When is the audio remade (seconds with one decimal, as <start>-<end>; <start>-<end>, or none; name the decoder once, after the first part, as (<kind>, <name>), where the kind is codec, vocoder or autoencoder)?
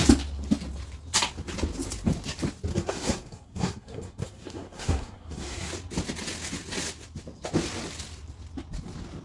2.7-5.7 (codec, SNAC)